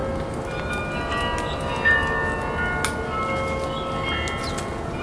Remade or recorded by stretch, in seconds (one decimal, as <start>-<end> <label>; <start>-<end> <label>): 0.0-5.0 recorded